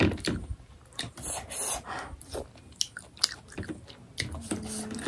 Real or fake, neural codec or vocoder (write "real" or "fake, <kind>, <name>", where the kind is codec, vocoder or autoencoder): real